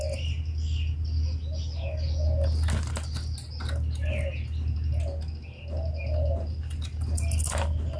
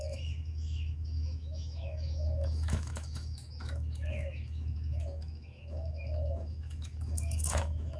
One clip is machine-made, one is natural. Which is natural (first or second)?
first